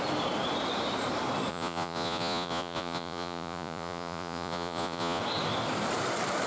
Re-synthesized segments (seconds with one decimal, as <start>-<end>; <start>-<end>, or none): 1.5-5.2